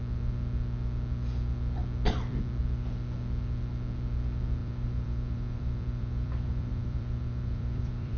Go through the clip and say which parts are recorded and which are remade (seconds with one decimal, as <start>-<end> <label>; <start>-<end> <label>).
0.0-4.6 recorded; 4.6-8.2 remade